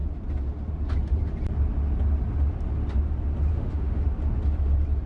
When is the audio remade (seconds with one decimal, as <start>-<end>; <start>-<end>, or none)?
3.5-4.0